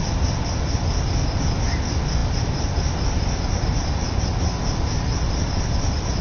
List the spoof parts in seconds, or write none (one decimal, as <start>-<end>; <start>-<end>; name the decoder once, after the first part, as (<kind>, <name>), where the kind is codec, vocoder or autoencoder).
none

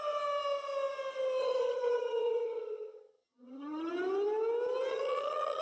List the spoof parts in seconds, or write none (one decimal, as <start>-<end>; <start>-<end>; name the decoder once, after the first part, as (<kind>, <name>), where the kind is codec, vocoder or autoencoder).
1.4-3.9 (vocoder, HiFi-GAN); 4.9-5.6

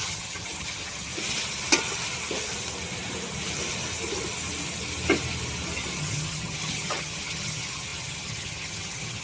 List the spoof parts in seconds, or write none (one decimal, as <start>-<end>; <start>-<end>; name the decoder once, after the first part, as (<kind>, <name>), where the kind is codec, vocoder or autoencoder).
0.0-1.1 (vocoder, HiFi-GAN); 6.0-9.2

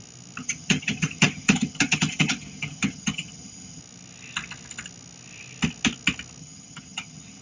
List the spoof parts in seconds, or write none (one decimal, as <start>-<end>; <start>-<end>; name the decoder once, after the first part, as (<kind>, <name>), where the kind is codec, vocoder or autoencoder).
0.4-3.8 (vocoder, HiFi-GAN); 6.4-7.4

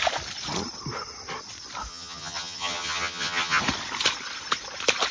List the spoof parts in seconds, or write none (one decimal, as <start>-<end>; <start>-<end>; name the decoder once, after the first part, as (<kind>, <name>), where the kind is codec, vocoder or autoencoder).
1.9-3.6 (vocoder, HiFi-GAN)

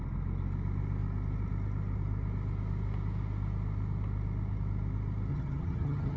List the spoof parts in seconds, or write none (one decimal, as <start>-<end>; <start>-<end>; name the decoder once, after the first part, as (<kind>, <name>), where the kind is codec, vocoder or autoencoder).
5.3-6.2 (vocoder, HiFi-GAN)